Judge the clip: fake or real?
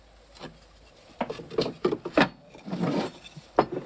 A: real